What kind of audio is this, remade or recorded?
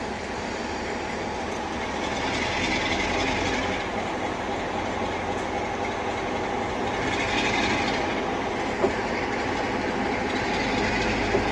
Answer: recorded